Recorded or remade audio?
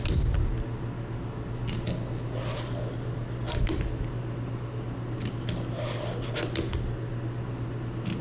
recorded